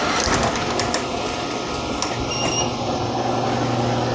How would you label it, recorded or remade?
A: recorded